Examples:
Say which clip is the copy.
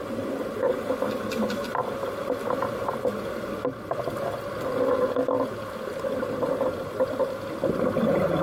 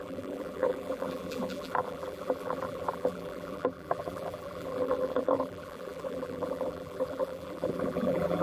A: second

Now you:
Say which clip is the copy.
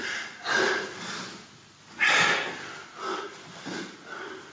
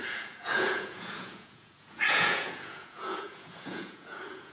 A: second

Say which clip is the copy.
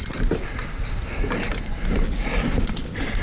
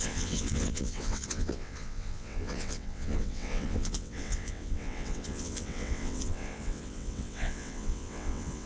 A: second